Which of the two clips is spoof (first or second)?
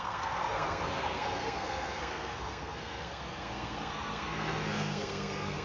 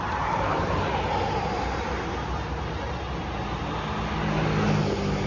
first